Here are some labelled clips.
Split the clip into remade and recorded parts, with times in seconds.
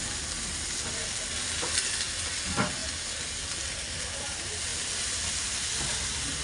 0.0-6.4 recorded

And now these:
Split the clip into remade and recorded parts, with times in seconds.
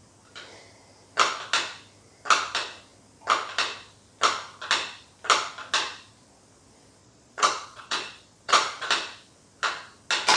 0.0-7.0 recorded; 7.0-8.9 remade; 8.9-10.4 recorded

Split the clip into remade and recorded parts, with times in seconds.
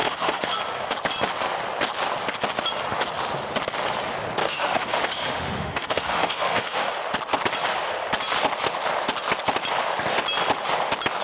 0.0-0.6 remade; 0.6-4.4 recorded; 4.4-6.9 remade; 6.9-11.2 recorded